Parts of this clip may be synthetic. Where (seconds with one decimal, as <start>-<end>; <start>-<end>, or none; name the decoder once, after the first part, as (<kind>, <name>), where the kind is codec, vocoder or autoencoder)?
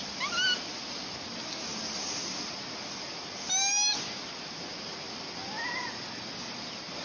none